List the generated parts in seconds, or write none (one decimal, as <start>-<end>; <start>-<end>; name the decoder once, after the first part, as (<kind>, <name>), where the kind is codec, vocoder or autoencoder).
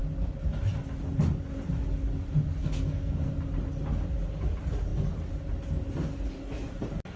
2.6-3.3 (codec, SNAC)